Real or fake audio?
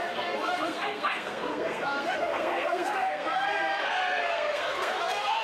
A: fake